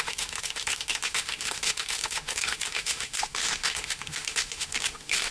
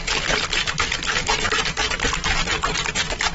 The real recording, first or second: second